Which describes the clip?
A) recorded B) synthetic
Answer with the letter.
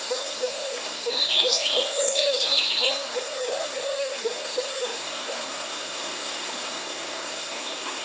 B